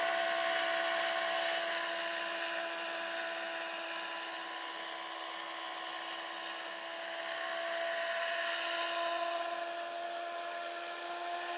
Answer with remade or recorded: recorded